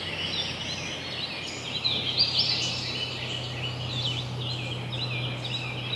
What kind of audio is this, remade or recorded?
recorded